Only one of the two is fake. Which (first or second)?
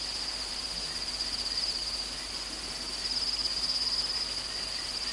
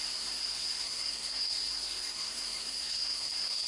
second